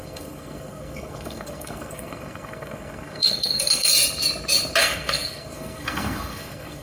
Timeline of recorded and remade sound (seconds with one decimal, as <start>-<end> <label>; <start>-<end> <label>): 0.0-3.9 remade; 3.9-4.8 recorded; 4.8-6.8 remade